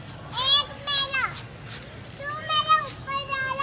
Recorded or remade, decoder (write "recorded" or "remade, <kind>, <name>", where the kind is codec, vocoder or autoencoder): recorded